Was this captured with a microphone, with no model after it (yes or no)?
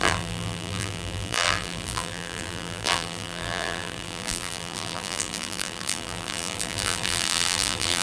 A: no